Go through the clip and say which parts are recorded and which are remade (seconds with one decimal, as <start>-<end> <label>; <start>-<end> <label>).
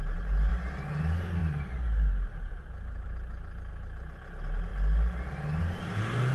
0.0-0.5 remade; 0.5-1.4 recorded; 1.4-3.7 remade; 3.7-6.3 recorded